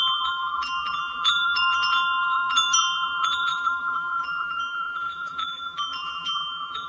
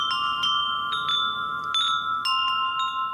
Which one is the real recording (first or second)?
second